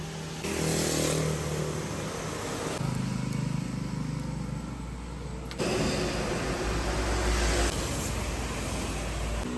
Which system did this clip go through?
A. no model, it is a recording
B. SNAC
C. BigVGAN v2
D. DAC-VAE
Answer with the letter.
A